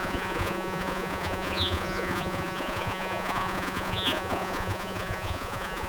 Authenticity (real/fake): fake